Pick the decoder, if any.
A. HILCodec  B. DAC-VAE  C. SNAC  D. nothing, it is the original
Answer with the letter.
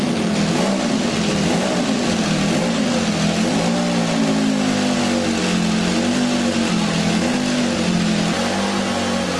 D